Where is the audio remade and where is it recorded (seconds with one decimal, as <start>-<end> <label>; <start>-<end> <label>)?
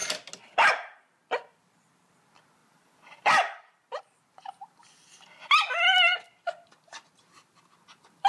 0.0-2.6 recorded; 2.6-4.0 remade; 4.0-8.3 recorded